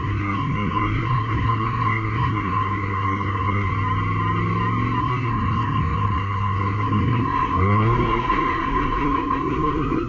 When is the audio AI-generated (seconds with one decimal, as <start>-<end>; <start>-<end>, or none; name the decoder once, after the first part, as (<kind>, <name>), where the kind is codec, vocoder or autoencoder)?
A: 0.0-3.7 (codec, SNAC); 5.0-10.1